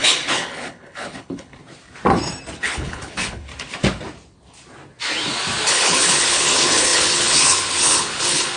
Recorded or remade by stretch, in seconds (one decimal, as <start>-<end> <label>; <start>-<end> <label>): 0.0-1.6 remade; 1.6-2.6 recorded; 2.6-3.5 remade; 3.5-5.7 recorded; 5.7-8.6 remade